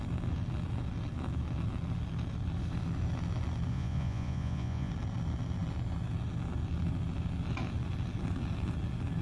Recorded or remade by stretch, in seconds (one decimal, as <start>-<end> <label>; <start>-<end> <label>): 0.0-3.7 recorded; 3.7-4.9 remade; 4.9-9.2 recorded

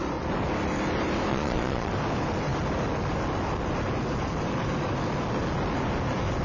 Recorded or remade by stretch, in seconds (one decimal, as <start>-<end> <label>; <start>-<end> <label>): 0.0-1.3 recorded; 1.3-1.9 remade; 1.9-6.4 recorded

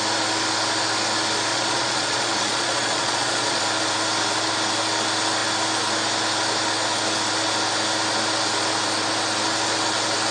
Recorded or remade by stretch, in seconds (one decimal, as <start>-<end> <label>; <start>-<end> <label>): 0.0-1.5 recorded; 1.5-3.6 remade; 3.6-10.3 recorded

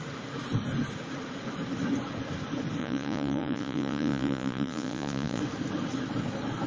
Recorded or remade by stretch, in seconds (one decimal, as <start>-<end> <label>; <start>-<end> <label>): 0.0-2.8 recorded; 2.8-5.4 remade; 5.4-6.7 recorded